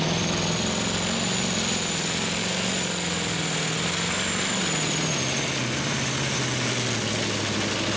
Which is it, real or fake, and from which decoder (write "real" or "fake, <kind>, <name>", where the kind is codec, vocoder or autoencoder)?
real